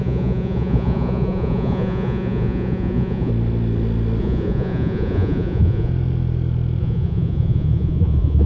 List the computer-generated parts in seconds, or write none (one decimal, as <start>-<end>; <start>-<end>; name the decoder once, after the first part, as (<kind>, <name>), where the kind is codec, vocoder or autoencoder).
0.0-3.3 (vocoder, Vocos); 4.2-5.9; 6.8-8.5